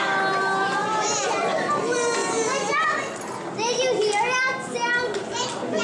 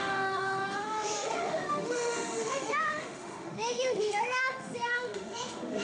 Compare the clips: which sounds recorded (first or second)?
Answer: first